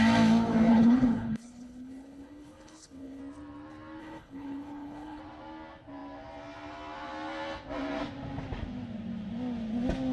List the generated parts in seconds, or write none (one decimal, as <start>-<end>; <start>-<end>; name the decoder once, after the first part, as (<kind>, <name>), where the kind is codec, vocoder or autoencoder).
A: 0.7-3.2 (codec, HILCodec); 4.0-5.2